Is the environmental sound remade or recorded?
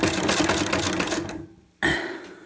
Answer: recorded